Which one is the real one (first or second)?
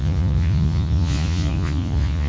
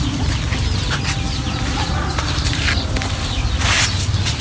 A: second